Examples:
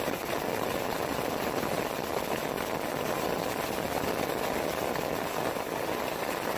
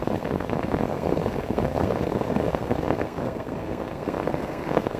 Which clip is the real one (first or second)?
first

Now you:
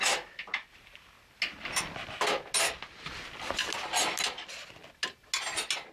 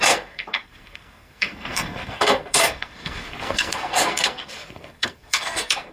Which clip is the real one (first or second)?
first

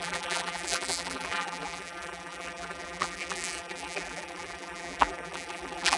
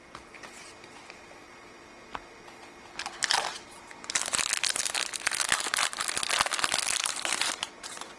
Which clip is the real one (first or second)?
second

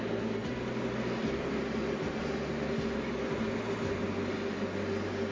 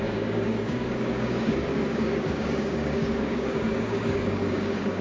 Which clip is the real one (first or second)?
first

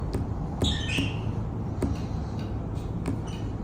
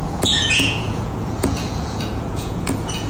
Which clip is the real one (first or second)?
first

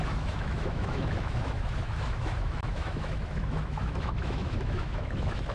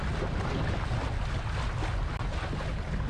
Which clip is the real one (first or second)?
second